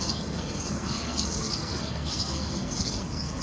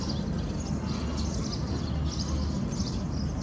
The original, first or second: second